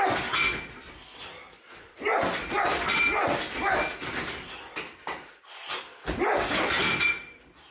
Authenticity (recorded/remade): recorded